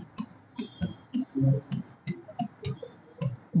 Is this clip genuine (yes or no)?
yes